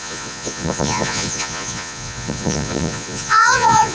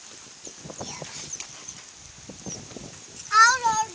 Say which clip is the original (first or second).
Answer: second